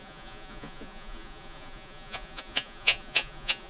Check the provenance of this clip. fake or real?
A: fake